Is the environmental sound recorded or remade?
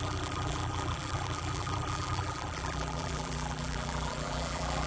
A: remade